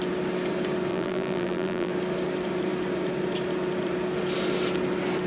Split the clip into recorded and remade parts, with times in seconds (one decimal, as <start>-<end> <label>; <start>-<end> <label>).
0.0-0.9 recorded; 0.9-1.9 remade; 1.9-5.3 recorded